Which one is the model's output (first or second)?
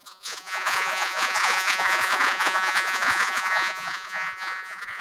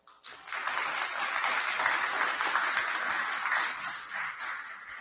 first